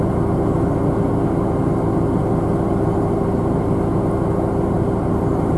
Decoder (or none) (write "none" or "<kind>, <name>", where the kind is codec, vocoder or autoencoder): none